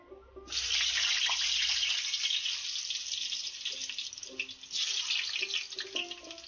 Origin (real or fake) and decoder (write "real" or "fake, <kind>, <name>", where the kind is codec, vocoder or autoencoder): real